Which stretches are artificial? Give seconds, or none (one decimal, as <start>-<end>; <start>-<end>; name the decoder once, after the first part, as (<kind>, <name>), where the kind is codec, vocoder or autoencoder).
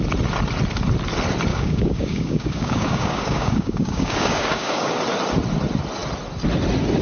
1.5-4.9 (codec, DAC)